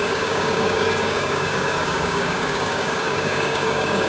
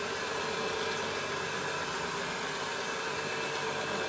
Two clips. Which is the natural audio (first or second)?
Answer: second